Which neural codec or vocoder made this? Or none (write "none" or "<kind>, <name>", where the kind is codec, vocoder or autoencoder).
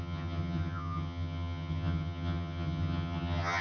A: vocoder, HiFi-GAN